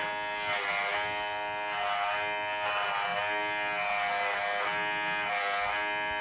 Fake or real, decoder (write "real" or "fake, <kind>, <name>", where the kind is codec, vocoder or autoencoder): real